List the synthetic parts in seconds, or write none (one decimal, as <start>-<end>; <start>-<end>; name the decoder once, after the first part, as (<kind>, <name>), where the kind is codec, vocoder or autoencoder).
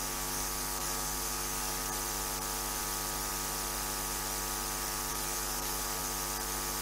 0.0-1.8 (codec, DAC); 5.1-6.0